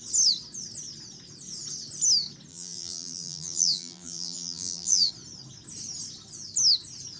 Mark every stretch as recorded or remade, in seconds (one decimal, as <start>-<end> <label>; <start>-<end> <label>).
0.0-2.5 recorded; 2.5-5.1 remade; 5.1-7.2 recorded